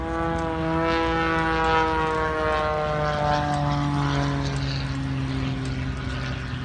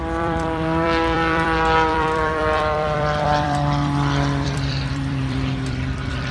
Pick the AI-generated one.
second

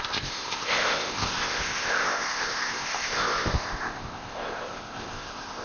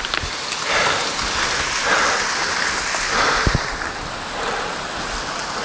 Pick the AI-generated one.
first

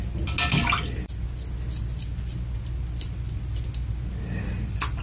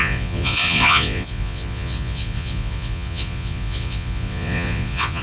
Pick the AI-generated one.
second